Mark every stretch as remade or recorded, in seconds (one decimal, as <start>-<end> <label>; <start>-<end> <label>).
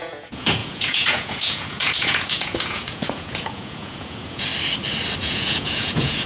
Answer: 0.0-4.5 remade; 4.5-5.2 recorded; 5.2-6.3 remade